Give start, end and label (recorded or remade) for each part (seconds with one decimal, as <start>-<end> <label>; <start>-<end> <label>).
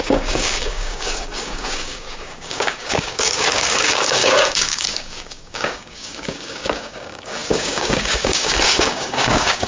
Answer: 0.0-9.7 remade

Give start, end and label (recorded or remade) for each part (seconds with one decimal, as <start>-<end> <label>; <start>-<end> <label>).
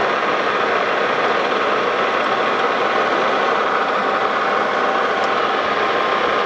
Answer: 0.0-1.2 remade; 1.2-4.0 recorded; 4.0-4.7 remade; 4.7-6.5 recorded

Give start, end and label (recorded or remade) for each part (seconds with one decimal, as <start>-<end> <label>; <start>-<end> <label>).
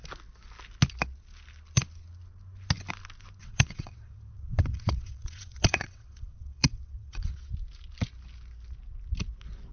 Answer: 0.0-3.4 recorded; 3.4-7.5 remade; 7.5-9.7 recorded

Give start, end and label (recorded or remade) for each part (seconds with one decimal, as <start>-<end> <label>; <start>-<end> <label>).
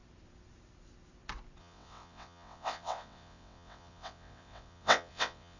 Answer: 0.0-1.6 recorded; 1.6-5.6 remade